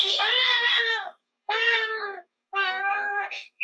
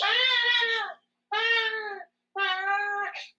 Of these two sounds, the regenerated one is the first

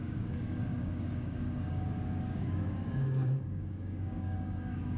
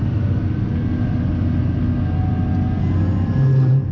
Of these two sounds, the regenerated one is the first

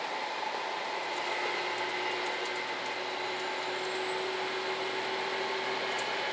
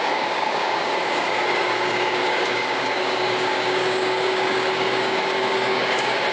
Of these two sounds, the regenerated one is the second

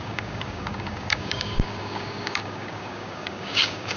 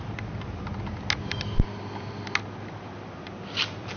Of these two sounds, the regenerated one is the first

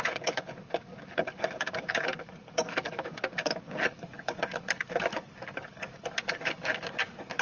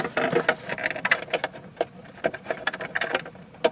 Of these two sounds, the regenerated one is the first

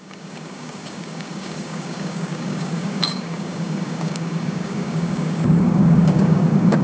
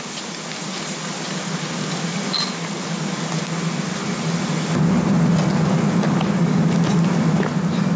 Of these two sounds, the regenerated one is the first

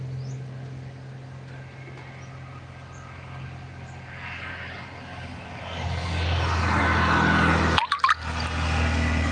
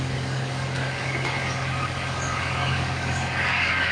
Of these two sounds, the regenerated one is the second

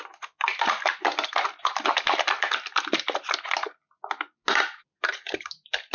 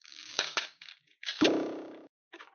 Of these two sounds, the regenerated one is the second